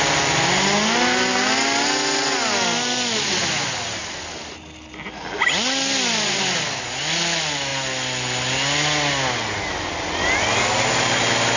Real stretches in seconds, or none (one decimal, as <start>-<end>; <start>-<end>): 0.0-11.6